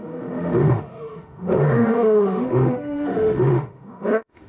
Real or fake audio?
fake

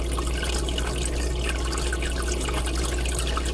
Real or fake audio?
real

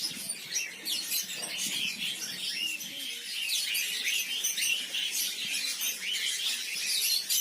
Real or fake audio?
real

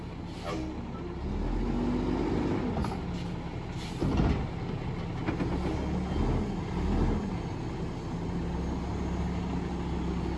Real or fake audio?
real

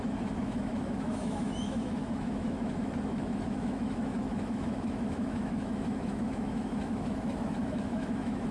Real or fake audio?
fake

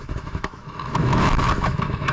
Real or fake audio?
fake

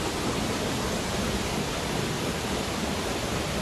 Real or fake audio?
real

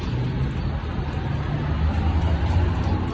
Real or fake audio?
real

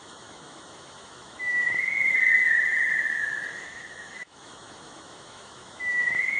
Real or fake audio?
fake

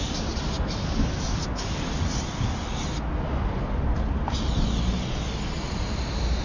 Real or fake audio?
real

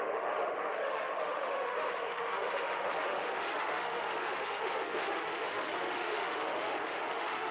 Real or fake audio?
fake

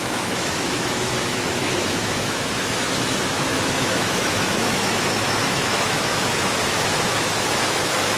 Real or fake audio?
fake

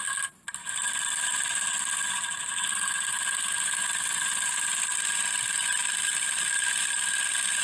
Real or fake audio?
real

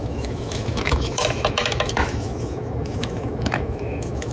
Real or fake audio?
fake